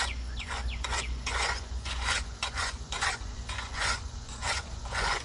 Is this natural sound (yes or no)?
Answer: no